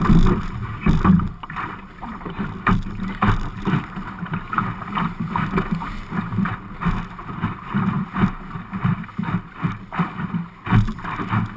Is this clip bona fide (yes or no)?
yes